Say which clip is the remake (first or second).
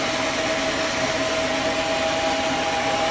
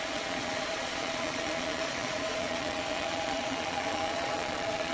second